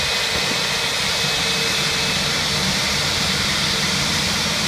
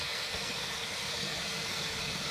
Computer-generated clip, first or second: second